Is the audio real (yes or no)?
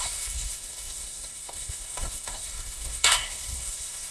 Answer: no